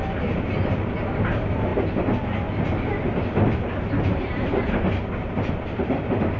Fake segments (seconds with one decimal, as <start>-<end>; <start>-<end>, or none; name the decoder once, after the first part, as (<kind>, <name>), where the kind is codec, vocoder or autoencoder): none